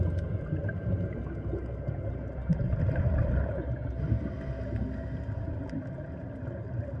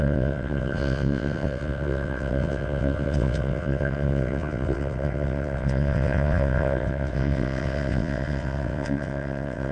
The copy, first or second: second